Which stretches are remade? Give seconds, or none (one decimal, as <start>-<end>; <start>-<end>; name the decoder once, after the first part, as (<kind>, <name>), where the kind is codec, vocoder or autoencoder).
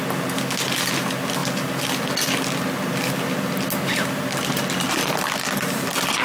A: none